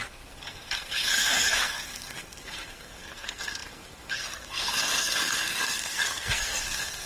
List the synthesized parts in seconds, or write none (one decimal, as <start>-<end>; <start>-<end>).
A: 0.0-7.1